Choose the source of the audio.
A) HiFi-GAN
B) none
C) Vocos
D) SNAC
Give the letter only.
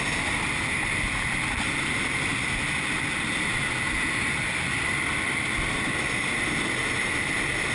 B